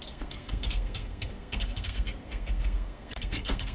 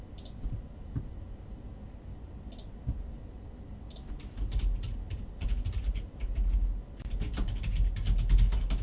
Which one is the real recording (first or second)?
second